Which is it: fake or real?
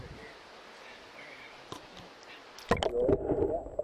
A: real